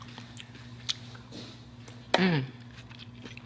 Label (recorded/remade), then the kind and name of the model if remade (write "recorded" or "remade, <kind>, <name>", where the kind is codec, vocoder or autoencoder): recorded